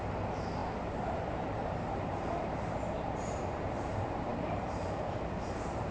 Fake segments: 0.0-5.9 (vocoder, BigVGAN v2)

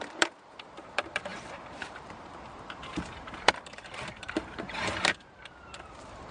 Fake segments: 0.0-6.3 (vocoder, BigVGAN v2)

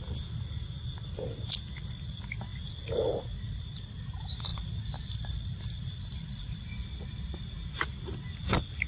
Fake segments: 4.5-7.4 (vocoder, BigVGAN v2)